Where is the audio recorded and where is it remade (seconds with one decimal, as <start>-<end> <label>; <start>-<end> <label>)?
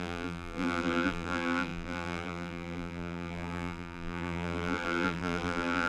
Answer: 0.0-5.9 remade